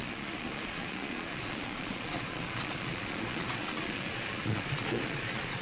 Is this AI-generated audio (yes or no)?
yes